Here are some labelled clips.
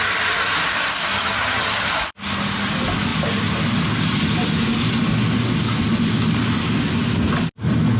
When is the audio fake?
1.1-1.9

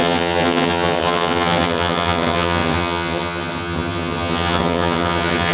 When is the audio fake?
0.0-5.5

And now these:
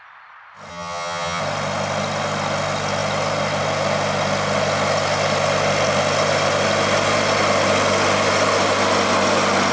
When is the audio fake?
0.7-1.4

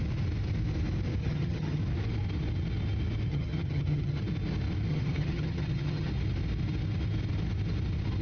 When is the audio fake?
1.2-1.8; 3.3-4.2; 4.9-6.1

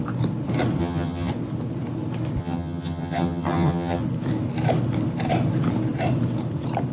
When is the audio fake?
0.8-1.3; 2.4-4.0

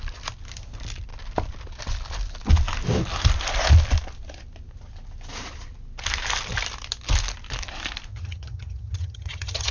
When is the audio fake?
8.1-9.7